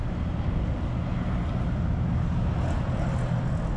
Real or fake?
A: real